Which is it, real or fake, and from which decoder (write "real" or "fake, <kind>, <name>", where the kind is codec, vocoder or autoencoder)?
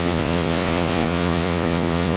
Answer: fake, vocoder, Vocos